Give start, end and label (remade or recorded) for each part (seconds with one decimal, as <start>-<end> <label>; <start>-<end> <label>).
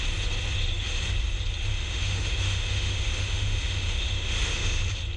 0.0-1.7 recorded; 1.7-4.8 remade; 4.8-5.2 recorded